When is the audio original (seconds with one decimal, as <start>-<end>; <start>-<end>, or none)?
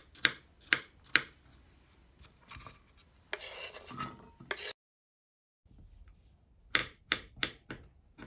0.0-4.4; 5.6-6.8; 7.7-8.3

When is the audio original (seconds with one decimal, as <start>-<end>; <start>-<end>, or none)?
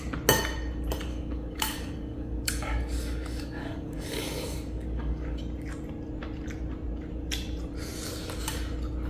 0.0-1.1; 5.4-9.1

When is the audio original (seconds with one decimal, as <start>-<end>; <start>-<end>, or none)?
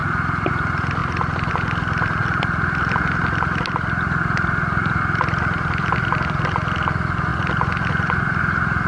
0.5-1.0; 1.5-2.2; 5.4-7.3; 8.4-8.9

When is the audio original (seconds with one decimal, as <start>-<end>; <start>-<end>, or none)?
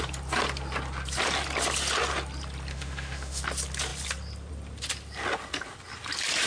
0.0-2.7; 3.4-6.5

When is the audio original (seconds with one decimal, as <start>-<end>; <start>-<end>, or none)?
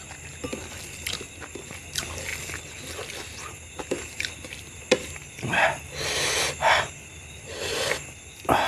0.0-8.7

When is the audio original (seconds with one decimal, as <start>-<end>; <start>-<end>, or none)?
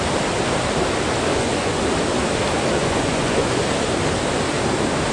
0.0-1.3; 1.8-2.8; 3.6-5.1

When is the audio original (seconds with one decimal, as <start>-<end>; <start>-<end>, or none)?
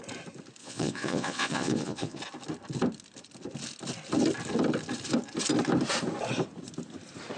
0.0-0.6; 2.2-7.4